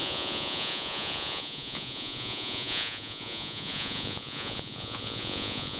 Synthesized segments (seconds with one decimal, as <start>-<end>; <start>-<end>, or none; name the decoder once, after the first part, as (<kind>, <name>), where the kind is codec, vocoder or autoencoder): 0.0-5.8 (vocoder, Vocos)